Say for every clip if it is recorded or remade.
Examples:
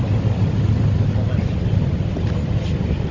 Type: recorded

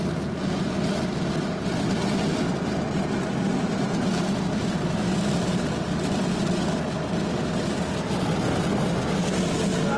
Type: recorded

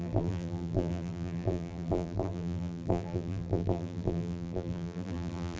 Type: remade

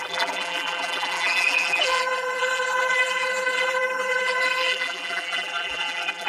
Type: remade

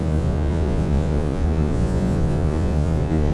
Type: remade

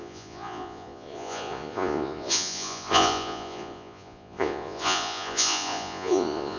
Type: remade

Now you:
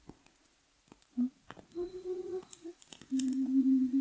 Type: remade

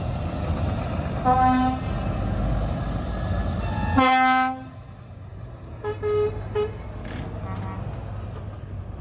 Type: recorded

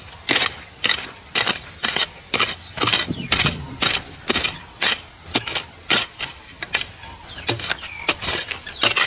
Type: recorded